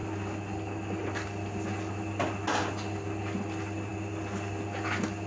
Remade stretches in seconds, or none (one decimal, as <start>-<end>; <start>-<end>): none